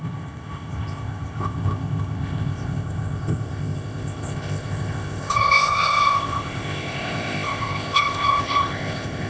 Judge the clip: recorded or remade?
remade